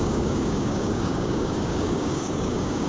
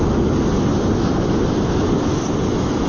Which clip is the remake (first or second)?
first